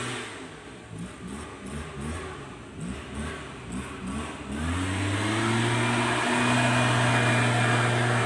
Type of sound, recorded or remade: recorded